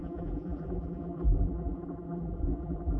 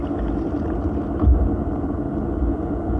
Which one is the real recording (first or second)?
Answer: second